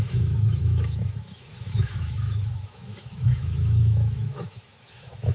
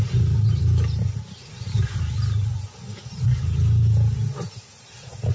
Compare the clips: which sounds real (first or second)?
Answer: second